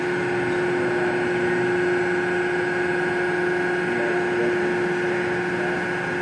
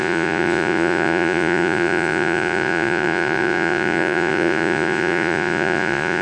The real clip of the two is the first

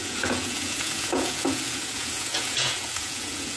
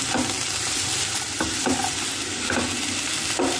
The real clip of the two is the second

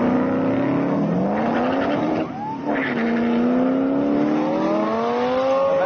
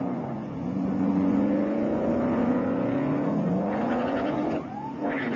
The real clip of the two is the first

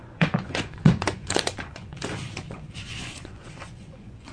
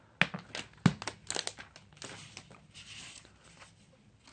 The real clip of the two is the second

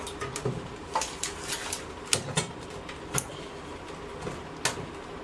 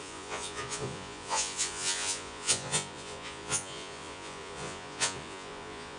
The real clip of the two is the first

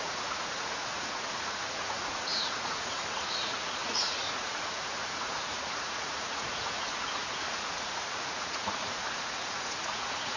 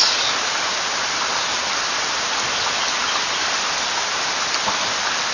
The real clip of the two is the second